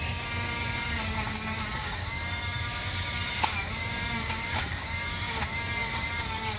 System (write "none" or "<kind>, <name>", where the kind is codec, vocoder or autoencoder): codec, DAC